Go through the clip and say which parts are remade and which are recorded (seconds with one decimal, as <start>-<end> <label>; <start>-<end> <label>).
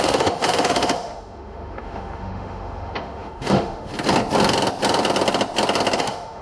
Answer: 0.0-3.9 remade; 3.9-6.0 recorded; 6.0-6.4 remade